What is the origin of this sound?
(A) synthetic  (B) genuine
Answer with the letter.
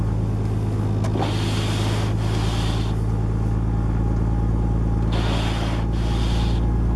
B